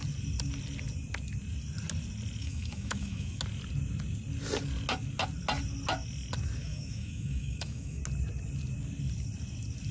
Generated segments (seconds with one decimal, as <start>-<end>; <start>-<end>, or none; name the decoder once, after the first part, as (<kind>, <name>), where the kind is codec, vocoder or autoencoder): 2.4-3.4 (autoencoder, DAC-VAE); 6.6-8.0